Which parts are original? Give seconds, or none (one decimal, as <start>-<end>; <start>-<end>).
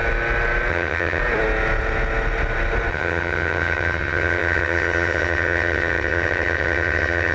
0.0-0.7; 1.2-2.9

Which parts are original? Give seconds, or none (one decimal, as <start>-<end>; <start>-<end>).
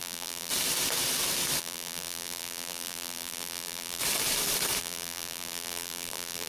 0.5-1.6; 4.0-4.8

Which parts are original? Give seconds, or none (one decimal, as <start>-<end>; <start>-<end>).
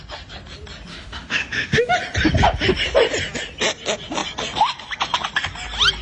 0.0-0.9; 1.9-6.0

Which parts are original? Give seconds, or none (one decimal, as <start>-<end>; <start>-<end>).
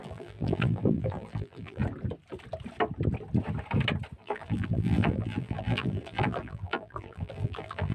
1.8-4.2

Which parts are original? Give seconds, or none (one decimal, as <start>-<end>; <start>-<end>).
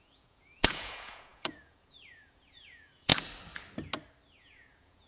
3.1-4.4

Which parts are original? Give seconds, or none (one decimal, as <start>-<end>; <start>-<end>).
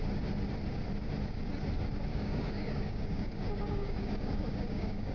0.0-2.1